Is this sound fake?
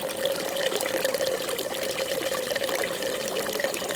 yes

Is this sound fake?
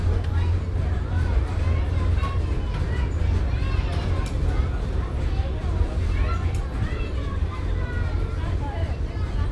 no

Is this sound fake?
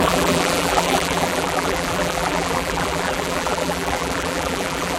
yes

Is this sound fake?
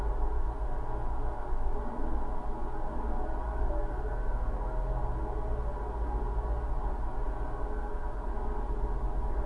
no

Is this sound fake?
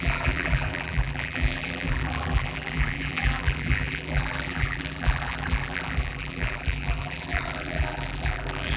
yes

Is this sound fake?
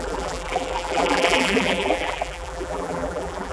yes